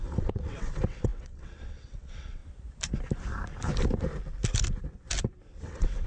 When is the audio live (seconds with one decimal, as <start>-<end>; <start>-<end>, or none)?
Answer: 2.4-5.6